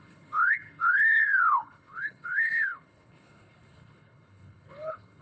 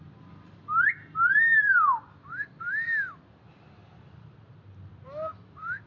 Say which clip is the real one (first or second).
second